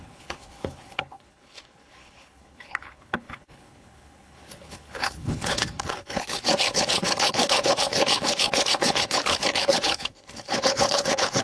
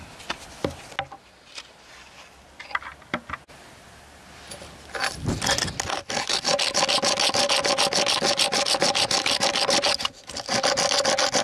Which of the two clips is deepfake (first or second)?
first